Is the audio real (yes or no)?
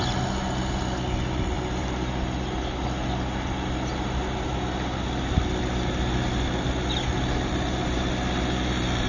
yes